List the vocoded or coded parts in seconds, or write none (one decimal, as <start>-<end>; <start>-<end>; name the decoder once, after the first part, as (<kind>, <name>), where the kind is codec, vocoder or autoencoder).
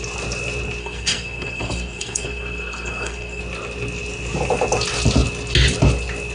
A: 0.8-3.4 (codec, SNAC)